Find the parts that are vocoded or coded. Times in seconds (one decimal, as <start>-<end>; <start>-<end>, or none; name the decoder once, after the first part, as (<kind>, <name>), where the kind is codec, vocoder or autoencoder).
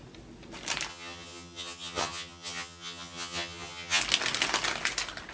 0.9-4.0 (vocoder, HiFi-GAN)